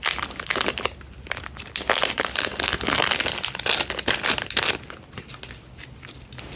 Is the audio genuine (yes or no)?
yes